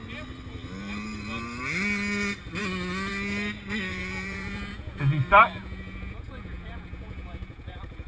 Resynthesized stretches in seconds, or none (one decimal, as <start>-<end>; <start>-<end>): 3.9-5.0; 5.6-8.1